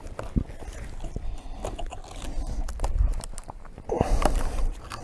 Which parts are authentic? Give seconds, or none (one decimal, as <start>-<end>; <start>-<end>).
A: 0.0-3.0